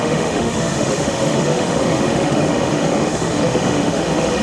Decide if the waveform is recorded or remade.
remade